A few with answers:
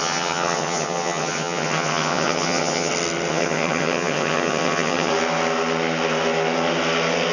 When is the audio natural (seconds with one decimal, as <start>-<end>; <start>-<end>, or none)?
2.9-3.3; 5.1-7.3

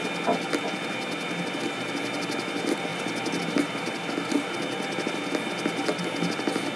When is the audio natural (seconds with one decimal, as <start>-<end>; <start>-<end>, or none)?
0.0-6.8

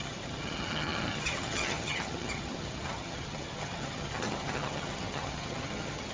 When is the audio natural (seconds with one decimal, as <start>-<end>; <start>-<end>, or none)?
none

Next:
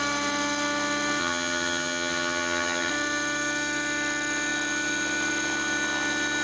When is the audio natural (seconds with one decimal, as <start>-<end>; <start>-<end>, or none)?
0.0-1.2; 2.9-6.4

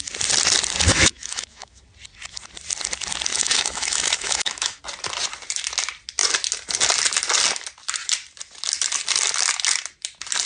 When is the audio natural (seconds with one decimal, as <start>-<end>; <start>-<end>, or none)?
0.0-0.9; 1.8-3.3; 4.8-10.5

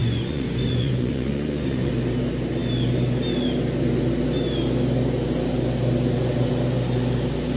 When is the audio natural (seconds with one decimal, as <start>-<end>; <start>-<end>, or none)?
1.9-7.6

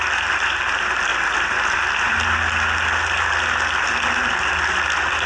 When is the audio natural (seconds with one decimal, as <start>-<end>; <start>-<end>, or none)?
0.0-5.3

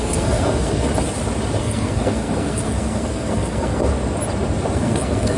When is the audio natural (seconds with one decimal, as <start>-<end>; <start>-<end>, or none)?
0.9-1.6; 3.9-4.7